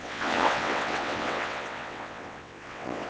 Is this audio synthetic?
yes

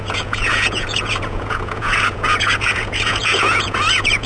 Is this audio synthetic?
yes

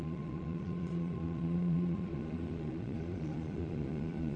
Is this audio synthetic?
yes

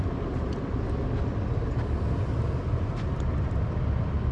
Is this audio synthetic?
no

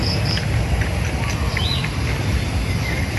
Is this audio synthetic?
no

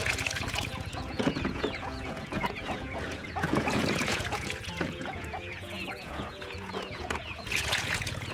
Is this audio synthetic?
yes